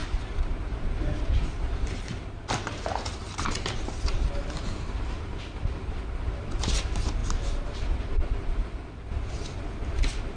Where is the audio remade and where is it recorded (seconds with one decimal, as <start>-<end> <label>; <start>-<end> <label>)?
0.0-4.3 remade; 4.3-7.2 recorded; 7.2-9.2 remade; 9.2-10.4 recorded